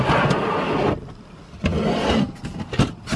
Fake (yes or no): no